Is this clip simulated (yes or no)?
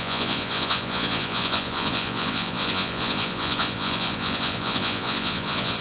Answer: yes